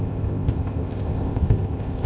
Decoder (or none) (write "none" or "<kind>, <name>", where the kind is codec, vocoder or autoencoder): codec, ZipCodec